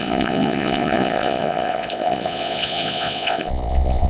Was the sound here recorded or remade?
remade